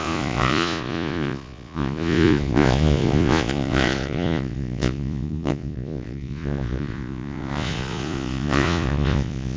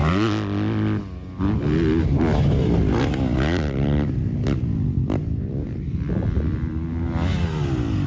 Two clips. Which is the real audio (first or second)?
second